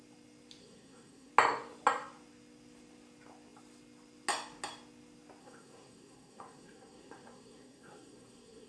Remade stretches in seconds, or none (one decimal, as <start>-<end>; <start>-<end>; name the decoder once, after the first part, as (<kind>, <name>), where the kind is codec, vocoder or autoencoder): 0.6-1.3 (codec, SNAC); 5.4-8.7